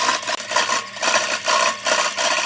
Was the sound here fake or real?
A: real